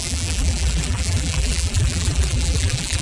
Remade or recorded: remade